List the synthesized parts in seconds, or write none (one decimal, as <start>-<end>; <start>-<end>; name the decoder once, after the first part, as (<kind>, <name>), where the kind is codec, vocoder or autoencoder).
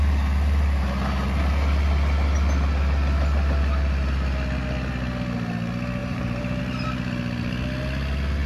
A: 6.0-6.6 (vocoder, BigVGAN v2)